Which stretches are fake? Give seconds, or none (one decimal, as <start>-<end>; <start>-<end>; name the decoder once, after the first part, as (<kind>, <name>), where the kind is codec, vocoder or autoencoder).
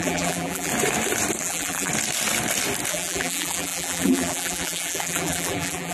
0.0-0.7 (vocoder, BigVGAN v2); 1.4-1.9; 2.9-5.9